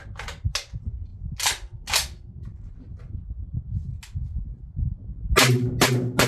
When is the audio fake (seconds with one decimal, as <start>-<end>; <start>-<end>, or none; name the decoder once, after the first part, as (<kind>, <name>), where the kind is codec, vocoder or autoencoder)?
none